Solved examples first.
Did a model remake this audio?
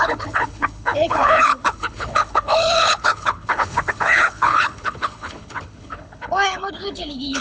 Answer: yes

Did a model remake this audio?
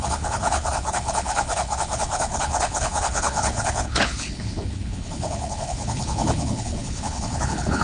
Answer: yes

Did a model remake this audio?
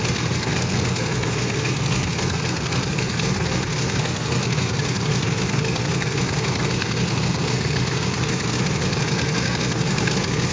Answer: yes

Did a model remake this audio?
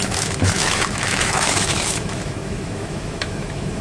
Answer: yes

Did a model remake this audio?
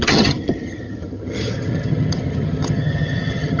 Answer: yes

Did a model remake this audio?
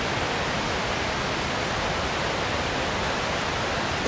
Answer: no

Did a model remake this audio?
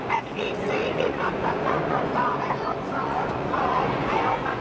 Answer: yes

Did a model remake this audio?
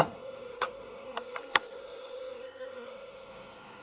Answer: yes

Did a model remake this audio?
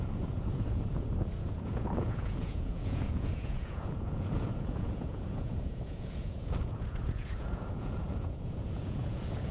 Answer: yes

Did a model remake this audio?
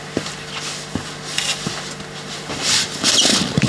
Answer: no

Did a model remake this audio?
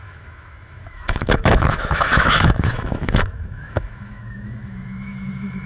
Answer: yes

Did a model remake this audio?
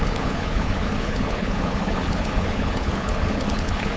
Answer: yes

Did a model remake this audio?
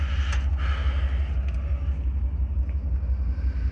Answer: no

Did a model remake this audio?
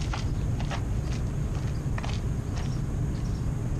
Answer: no